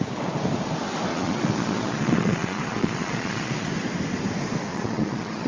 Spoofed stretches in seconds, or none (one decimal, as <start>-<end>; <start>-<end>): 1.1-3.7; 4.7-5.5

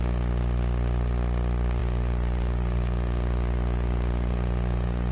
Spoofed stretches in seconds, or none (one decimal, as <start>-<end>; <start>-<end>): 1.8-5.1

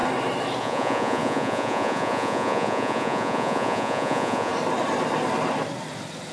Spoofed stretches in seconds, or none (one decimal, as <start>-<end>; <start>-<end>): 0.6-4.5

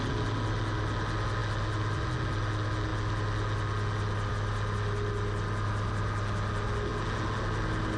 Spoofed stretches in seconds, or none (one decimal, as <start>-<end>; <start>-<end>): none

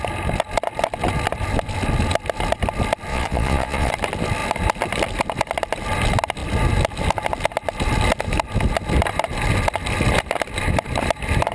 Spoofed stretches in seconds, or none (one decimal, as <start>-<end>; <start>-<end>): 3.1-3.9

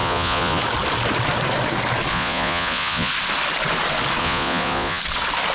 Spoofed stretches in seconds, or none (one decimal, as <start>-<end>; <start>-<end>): 0.0-0.6; 2.1-3.1; 4.2-5.0